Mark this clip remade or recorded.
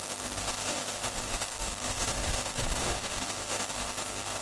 remade